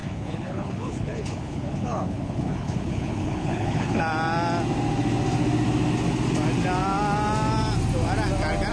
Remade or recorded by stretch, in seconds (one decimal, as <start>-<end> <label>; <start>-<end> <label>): 0.0-4.0 remade; 4.0-8.7 recorded